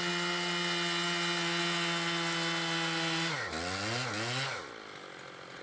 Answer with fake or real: real